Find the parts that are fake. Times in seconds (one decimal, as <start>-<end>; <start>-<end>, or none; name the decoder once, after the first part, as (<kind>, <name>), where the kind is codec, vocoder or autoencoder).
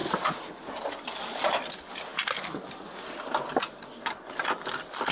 0.0-0.5 (vocoder, BigVGAN v2); 2.1-2.7